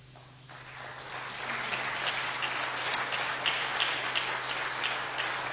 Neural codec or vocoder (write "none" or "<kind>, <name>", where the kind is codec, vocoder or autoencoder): none